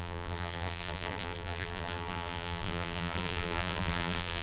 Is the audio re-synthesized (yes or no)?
yes